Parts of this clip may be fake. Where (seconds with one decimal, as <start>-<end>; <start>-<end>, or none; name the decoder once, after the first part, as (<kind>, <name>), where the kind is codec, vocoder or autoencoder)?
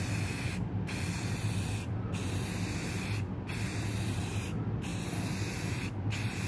none